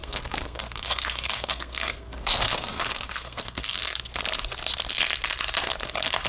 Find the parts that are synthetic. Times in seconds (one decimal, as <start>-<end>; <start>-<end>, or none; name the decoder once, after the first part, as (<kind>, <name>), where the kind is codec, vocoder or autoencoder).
0.0-3.8 (codec, SNAC)